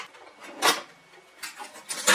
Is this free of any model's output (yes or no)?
yes